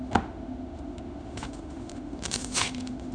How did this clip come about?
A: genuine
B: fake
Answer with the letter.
B